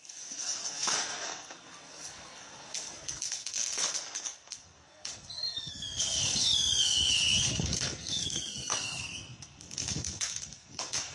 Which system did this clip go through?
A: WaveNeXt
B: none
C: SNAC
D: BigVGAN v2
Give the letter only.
C